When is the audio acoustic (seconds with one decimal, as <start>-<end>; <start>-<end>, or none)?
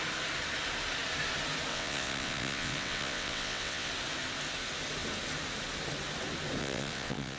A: 0.0-1.7; 3.9-6.6